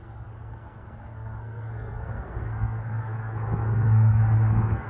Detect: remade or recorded remade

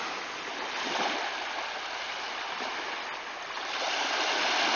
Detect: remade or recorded recorded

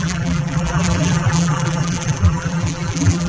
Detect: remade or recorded remade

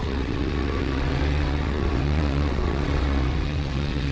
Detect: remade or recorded remade